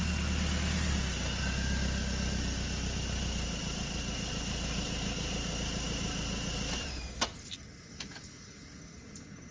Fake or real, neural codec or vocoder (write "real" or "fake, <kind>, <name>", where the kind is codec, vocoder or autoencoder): real